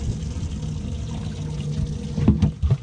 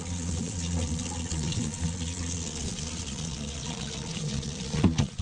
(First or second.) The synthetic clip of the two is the second